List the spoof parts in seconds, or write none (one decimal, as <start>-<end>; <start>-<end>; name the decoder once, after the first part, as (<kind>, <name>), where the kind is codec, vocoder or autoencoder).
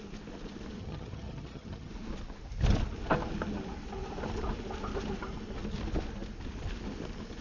0.8-1.9 (vocoder, HiFi-GAN)